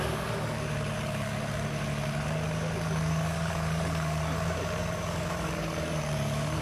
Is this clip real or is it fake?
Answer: fake